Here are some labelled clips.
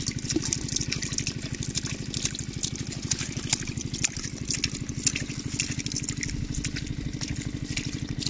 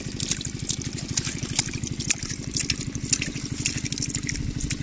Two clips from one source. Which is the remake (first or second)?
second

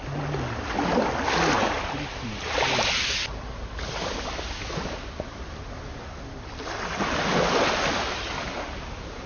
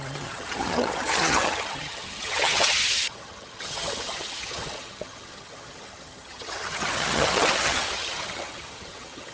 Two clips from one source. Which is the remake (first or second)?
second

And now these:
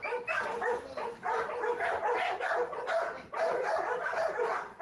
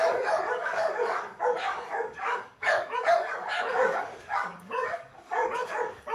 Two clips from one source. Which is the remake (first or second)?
second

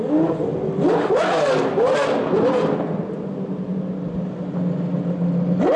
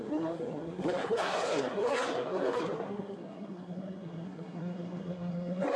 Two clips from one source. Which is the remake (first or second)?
second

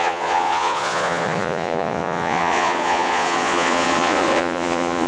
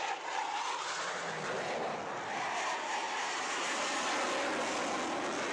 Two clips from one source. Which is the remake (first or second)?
first